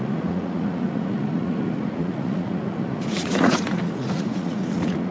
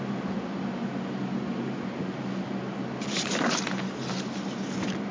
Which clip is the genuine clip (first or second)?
second